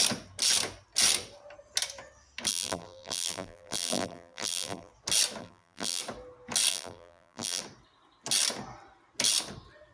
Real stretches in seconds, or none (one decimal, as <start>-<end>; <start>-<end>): 0.0-2.5; 4.9-5.4; 6.0-6.7; 7.6-9.9